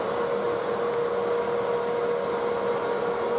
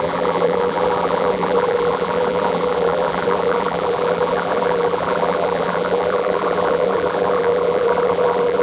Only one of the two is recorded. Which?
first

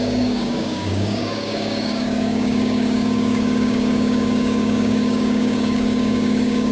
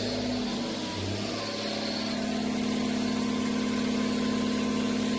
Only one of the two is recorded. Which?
second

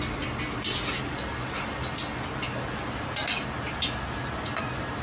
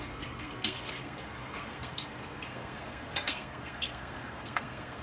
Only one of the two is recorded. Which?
first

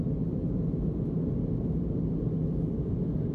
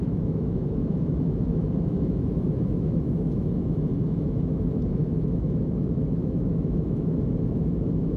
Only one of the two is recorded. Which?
first